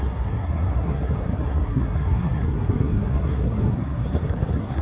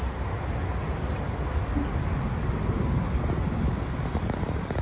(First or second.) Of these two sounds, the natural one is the second